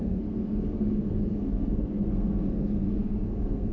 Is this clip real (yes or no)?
no